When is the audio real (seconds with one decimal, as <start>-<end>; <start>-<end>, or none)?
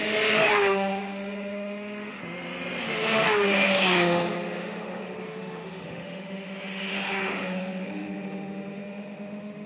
2.2-2.8